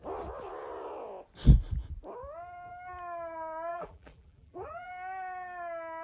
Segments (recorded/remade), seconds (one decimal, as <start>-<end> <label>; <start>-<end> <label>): 0.0-3.7 recorded; 3.7-4.9 remade; 4.9-6.0 recorded